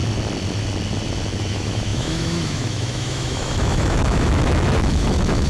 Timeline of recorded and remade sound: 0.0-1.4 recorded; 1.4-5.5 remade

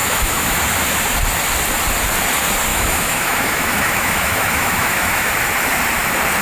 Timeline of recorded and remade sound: 0.0-0.6 remade; 0.6-2.7 recorded; 2.7-5.3 remade; 5.3-6.4 recorded

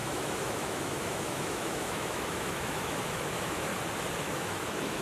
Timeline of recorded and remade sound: 0.0-3.7 remade; 3.7-4.2 recorded; 4.2-5.0 remade

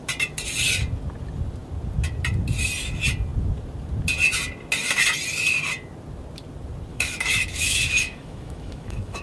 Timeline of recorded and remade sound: 0.0-6.9 recorded; 6.9-9.2 remade

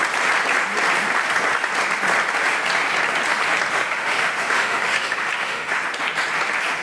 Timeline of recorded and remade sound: 0.0-3.7 recorded; 3.7-5.7 remade; 5.7-6.8 recorded

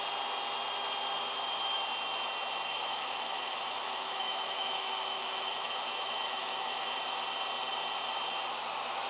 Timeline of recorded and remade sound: 0.0-2.7 recorded; 2.7-7.0 remade; 7.0-9.1 recorded